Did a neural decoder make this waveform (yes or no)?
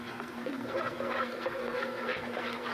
yes